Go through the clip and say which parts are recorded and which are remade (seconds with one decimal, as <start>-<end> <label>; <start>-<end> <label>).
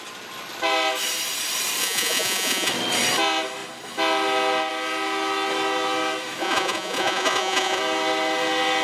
0.0-1.8 recorded; 1.8-2.7 remade; 2.7-6.4 recorded; 6.4-7.8 remade; 7.8-8.8 recorded